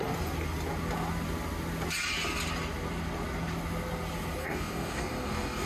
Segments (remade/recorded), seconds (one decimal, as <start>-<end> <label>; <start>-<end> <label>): 0.0-4.4 recorded; 4.4-5.7 remade